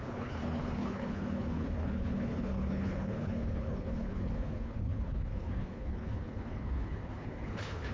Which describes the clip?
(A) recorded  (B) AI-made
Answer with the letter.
B